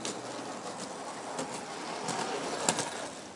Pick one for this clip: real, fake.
real